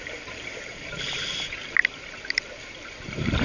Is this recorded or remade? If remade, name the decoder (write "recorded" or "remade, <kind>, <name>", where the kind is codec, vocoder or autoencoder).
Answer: recorded